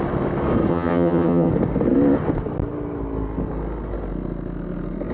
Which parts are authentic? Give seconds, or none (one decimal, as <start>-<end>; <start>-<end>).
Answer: 0.0-0.7; 1.5-5.1